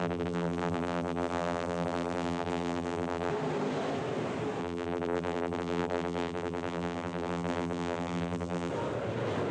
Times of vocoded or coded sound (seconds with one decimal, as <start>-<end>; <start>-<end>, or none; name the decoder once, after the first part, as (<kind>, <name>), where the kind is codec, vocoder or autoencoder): 0.0-3.3 (vocoder, BigVGAN v2); 4.6-8.7